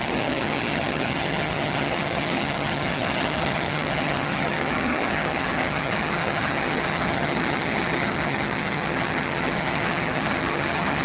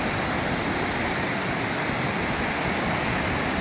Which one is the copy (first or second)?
first